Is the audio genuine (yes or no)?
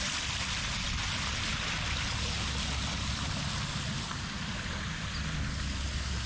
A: yes